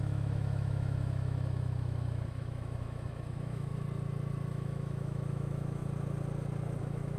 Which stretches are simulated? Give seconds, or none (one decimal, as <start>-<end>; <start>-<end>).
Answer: 0.0-3.7; 4.5-5.8; 6.8-7.2